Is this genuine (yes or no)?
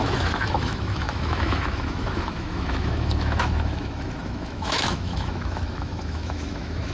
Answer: no